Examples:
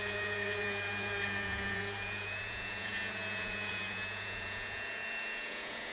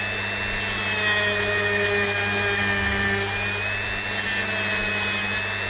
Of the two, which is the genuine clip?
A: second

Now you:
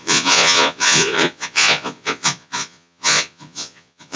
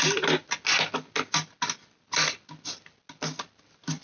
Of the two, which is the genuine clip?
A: second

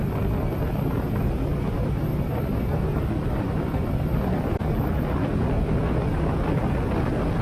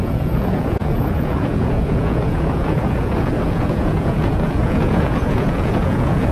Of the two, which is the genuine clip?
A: first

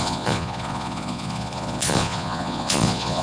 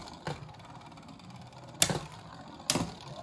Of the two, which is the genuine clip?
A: second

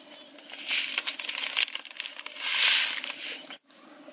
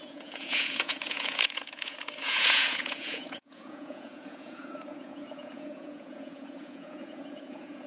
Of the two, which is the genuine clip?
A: first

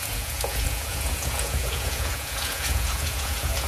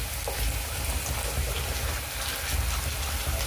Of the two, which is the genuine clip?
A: second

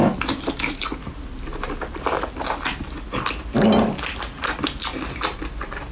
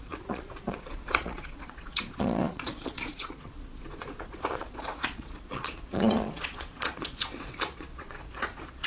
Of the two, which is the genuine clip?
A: first